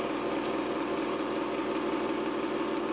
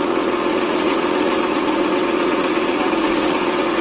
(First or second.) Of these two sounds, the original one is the first